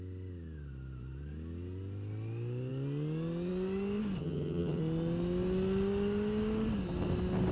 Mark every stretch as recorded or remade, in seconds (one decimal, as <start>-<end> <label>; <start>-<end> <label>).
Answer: 0.0-4.2 recorded; 4.2-4.8 remade; 4.8-7.5 recorded